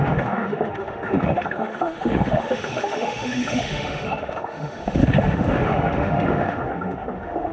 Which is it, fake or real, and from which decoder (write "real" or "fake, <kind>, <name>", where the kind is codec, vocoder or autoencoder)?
fake, autoencoder, DAC-VAE